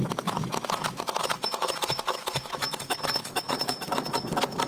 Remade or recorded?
remade